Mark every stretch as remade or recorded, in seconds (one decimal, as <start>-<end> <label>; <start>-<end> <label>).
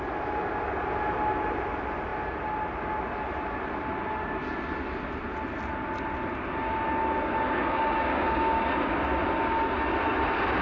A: 0.0-7.3 recorded; 7.3-8.6 remade; 8.6-10.6 recorded